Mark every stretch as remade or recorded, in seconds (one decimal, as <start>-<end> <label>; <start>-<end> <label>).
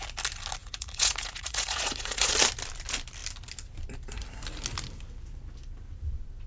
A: 0.0-0.6 recorded; 0.6-2.3 remade; 2.3-6.5 recorded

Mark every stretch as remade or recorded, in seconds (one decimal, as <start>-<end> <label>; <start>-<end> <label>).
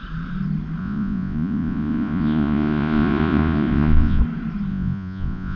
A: 0.0-0.8 recorded; 0.8-4.2 remade; 4.2-4.7 recorded; 4.7-5.6 remade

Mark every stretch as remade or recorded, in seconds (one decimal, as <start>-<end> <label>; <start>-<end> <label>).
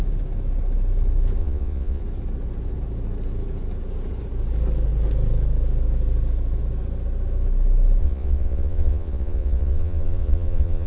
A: 0.0-1.4 recorded; 1.4-2.0 remade; 2.0-8.0 recorded; 8.0-10.9 remade